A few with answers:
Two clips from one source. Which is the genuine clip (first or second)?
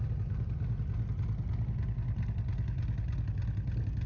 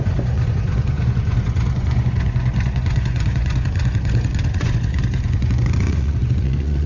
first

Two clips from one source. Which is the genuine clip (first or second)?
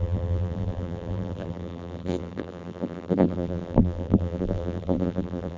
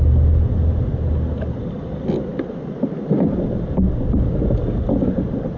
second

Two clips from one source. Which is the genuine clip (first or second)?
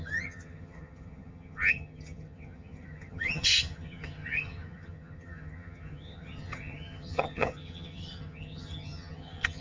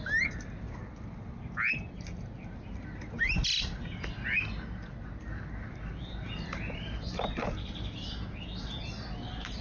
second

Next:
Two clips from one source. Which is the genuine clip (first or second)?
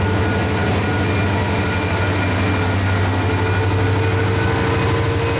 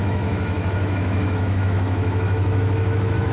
first